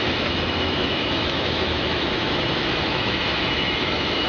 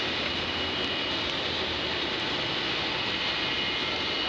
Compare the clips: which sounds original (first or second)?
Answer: second